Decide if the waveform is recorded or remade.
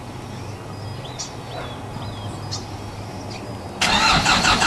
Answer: recorded